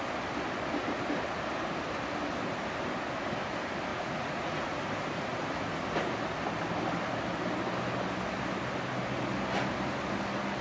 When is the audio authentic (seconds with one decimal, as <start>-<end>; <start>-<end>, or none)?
0.0-3.9; 4.8-10.6

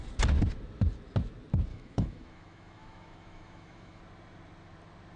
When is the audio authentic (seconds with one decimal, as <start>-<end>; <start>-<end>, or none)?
0.0-1.7; 4.0-5.2

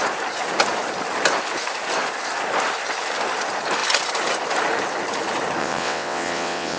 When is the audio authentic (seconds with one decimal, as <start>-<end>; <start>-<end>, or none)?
0.0-5.6

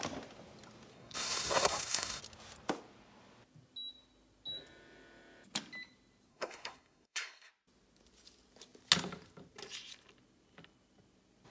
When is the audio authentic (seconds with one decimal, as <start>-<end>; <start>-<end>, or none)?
0.0-0.9; 2.2-6.3; 7.5-11.5

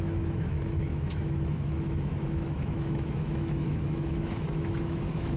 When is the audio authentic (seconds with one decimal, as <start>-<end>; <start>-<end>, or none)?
none

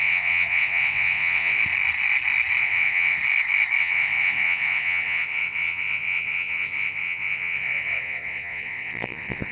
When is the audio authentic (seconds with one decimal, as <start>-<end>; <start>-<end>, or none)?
1.6-2.6; 3.2-3.8

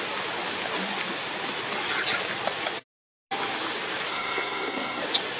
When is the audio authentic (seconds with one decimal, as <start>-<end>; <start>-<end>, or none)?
0.0-4.1; 5.0-5.4

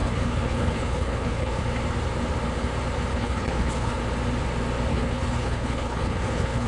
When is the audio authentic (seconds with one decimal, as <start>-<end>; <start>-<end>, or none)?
1.6-3.1; 4.0-4.9